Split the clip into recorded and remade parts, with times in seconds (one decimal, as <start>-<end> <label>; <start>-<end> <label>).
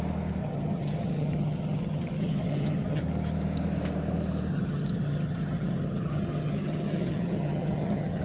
0.0-0.4 recorded; 0.4-3.0 remade; 3.0-4.5 recorded; 4.5-8.2 remade